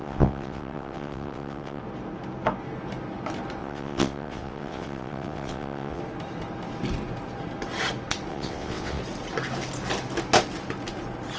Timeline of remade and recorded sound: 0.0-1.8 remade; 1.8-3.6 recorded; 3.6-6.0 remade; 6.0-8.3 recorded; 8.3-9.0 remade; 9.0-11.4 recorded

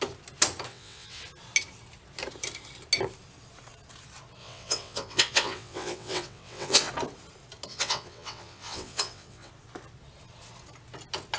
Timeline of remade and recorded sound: 0.0-0.7 recorded; 0.7-1.2 remade; 1.2-4.4 recorded; 4.4-6.9 remade; 6.9-7.7 recorded; 7.7-9.5 remade; 9.5-11.4 recorded

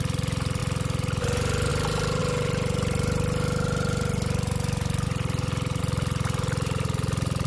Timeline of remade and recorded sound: 0.0-7.5 recorded

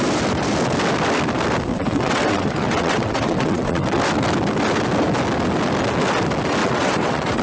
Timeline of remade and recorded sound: 0.0-1.7 recorded; 1.7-4.0 remade; 4.0-6.6 recorded; 6.6-7.4 remade

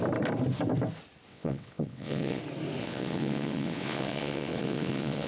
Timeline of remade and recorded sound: 0.0-1.3 recorded; 1.3-2.4 remade; 2.4-2.8 recorded; 2.8-5.3 remade